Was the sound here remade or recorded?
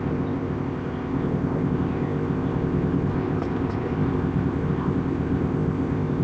remade